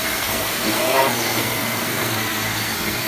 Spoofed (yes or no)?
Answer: yes